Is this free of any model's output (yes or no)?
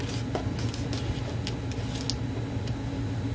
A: yes